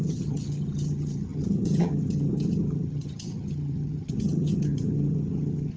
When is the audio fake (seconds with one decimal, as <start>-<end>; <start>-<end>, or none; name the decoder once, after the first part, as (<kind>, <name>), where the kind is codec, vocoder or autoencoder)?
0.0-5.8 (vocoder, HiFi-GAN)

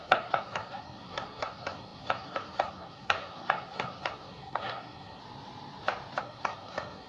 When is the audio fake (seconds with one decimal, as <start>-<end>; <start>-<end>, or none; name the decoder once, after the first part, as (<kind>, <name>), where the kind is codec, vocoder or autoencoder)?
0.0-5.2 (codec, SNAC); 6.2-7.1

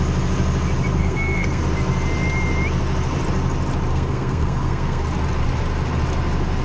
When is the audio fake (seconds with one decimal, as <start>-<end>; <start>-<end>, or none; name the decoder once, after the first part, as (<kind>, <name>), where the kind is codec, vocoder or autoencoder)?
1.0-1.6 (codec, SNAC); 3.9-5.0

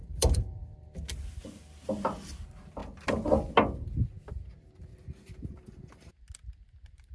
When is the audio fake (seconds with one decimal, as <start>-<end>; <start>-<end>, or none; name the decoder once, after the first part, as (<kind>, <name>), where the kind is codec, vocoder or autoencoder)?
0.0-0.7 (vocoder, BigVGAN v2); 4.9-6.1

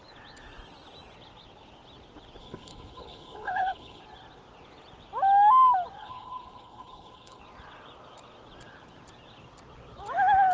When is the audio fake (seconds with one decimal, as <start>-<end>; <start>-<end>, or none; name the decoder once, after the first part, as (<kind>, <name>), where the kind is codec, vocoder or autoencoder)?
2.4-4.0 (codec, HILCodec); 6.0-7.4

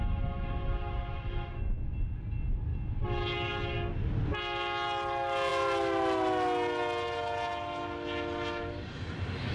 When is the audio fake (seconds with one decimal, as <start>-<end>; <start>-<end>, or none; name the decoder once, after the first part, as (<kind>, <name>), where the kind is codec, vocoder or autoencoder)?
none